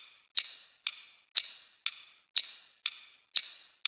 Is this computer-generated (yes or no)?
no